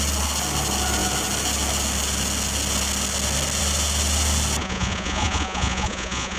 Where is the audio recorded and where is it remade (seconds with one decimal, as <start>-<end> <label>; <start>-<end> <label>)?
0.0-4.6 recorded; 4.6-6.4 remade